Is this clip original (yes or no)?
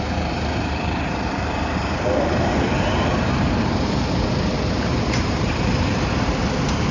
no